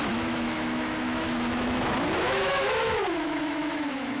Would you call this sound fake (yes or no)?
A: yes